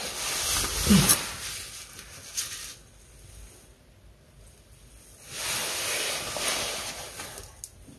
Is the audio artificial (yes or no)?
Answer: no